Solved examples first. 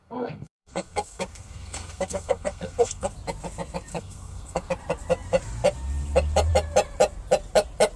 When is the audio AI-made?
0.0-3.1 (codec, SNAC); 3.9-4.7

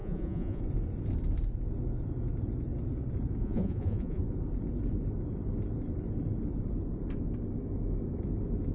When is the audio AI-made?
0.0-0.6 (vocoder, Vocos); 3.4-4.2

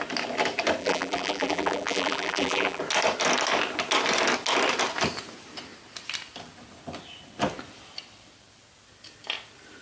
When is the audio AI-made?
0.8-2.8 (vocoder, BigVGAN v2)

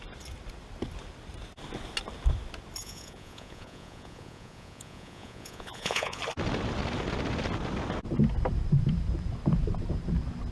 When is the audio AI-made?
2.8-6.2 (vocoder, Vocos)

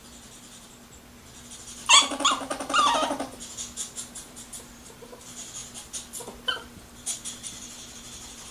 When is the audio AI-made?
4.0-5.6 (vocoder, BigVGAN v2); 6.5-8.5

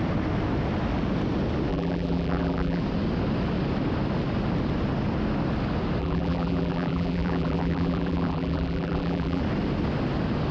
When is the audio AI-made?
1.7-2.8 (vocoder, BigVGAN v2); 6.0-9.4

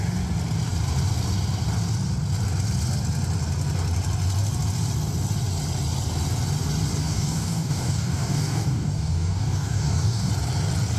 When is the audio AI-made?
7.0-10.3 (codec, DAC)

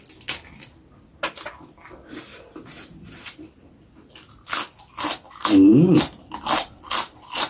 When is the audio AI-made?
none